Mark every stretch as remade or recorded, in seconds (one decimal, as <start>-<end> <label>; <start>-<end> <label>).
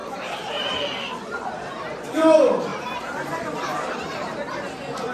0.0-2.0 remade; 2.0-2.7 recorded; 2.7-4.5 remade; 4.5-5.1 recorded